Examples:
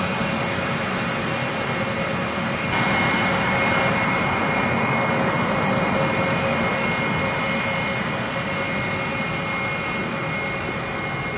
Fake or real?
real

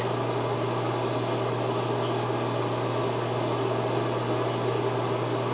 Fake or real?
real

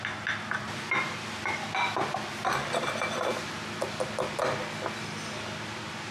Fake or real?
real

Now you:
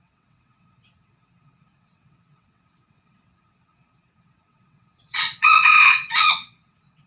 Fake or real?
fake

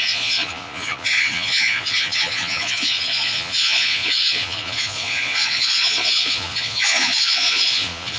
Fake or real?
fake